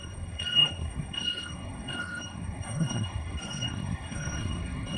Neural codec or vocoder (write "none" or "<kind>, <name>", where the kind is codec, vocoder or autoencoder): codec, SNAC